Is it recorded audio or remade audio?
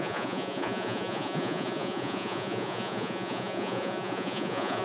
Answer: remade